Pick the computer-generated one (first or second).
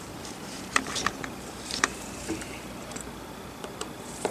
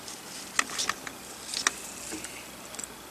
first